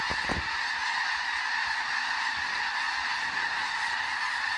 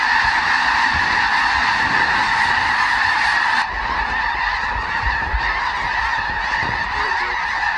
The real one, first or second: first